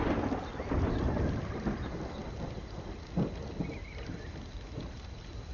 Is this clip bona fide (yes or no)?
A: yes